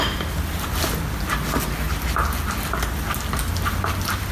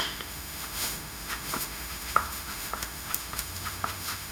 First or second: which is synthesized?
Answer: second